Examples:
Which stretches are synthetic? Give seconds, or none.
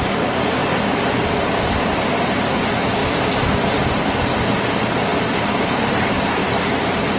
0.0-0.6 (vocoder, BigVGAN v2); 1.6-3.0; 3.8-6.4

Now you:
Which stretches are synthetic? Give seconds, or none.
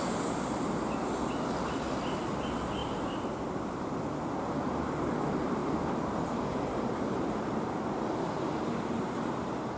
2.8-4.0 (vocoder, BigVGAN v2); 5.6-9.3